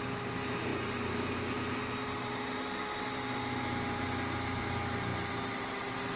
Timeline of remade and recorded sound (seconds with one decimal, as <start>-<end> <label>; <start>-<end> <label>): 0.0-6.2 recorded